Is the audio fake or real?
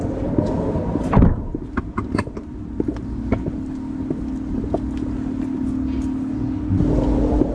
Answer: real